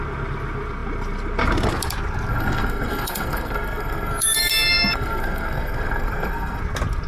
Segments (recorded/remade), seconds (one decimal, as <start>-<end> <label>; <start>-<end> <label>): 0.0-2.3 recorded; 2.3-6.6 remade; 6.6-7.1 recorded